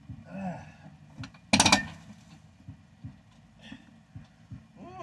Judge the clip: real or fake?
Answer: real